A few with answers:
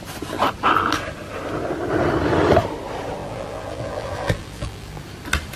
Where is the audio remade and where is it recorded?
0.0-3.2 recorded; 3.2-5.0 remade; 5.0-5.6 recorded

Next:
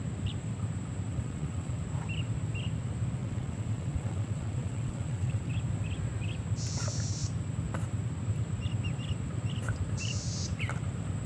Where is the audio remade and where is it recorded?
0.0-1.1 recorded; 1.1-1.8 remade; 1.8-3.2 recorded; 3.2-5.5 remade; 5.5-11.3 recorded

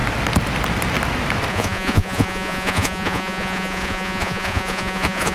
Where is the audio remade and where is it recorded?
0.0-1.5 recorded; 1.5-5.3 remade